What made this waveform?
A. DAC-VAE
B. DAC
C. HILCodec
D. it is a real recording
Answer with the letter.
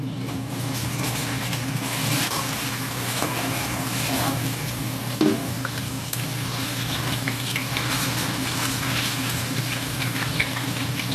B